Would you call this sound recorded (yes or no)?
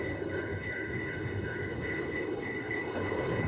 no